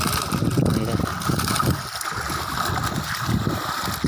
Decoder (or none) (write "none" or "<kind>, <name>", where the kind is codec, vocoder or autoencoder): none